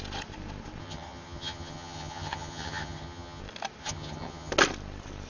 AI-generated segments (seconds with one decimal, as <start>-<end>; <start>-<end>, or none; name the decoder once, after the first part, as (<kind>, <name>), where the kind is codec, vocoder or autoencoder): 0.8-3.4 (vocoder, HiFi-GAN); 3.8-4.5